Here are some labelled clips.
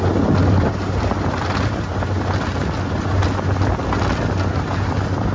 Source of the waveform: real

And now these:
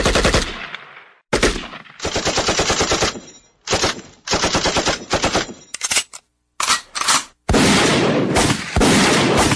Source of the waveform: real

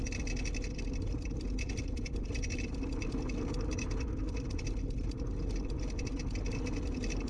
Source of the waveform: real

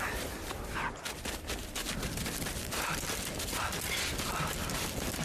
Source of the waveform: real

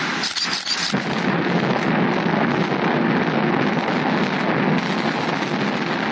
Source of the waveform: real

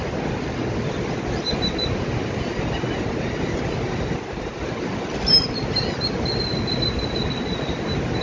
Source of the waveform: real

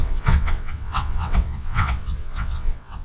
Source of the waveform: fake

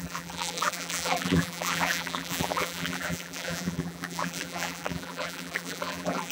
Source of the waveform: fake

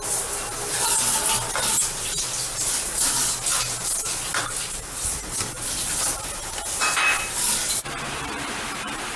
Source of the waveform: real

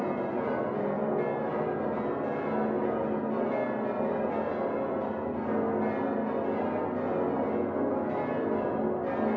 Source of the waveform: real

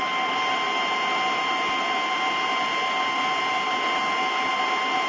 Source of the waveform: real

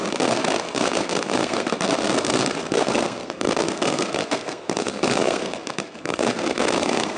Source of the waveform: fake